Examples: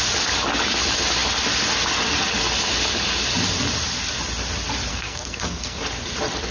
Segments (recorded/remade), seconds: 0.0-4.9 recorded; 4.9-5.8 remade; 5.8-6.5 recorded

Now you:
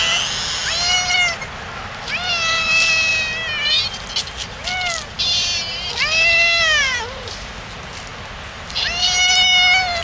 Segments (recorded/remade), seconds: 0.0-6.8 recorded; 6.8-7.5 remade; 7.5-10.0 recorded

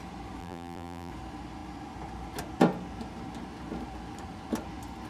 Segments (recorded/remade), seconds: 0.0-0.4 recorded; 0.4-1.1 remade; 1.1-5.1 recorded

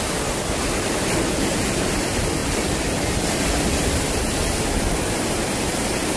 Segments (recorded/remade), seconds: 0.0-6.2 recorded